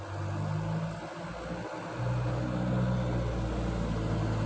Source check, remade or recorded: recorded